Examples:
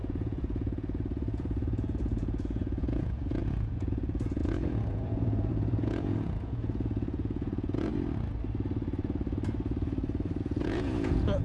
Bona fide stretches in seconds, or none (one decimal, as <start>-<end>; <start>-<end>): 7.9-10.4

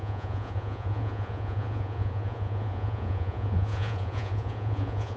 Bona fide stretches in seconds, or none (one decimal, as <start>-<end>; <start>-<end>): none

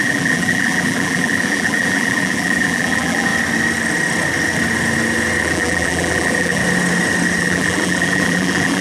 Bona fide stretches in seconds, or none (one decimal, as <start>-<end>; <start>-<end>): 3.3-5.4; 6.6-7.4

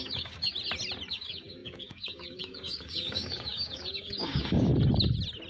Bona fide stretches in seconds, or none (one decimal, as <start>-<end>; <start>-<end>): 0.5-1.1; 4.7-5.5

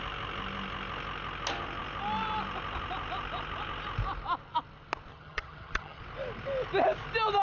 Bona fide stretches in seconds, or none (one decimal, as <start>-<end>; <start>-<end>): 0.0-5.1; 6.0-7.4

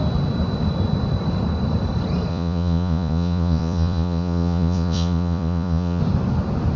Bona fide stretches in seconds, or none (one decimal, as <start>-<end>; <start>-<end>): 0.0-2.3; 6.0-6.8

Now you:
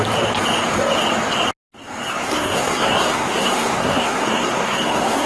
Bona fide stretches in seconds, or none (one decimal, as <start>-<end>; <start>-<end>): 0.0-2.1